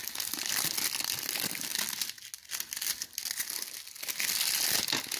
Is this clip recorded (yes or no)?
yes